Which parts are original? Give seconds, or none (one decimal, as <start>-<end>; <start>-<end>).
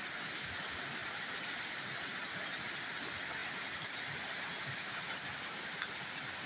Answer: 0.0-1.0; 1.6-3.4; 4.0-6.5